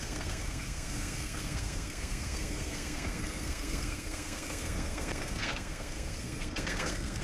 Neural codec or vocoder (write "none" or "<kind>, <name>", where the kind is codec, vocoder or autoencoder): codec, SNAC